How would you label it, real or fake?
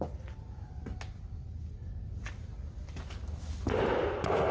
real